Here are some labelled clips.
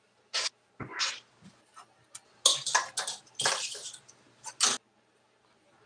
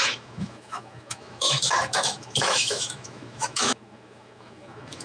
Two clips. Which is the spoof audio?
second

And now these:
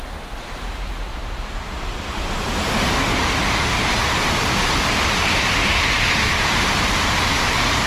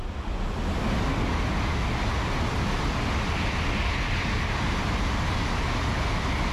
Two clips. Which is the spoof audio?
first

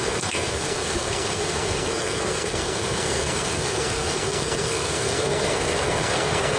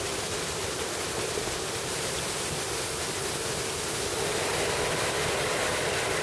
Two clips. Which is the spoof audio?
first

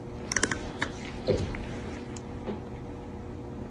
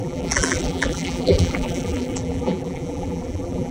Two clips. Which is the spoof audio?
second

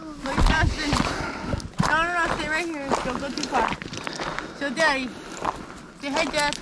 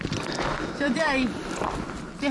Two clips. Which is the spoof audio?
second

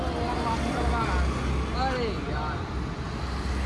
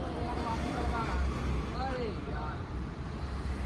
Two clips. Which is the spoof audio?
second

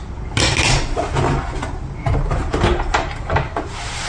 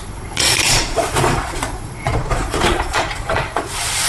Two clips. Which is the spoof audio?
second